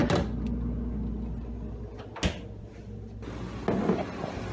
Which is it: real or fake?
real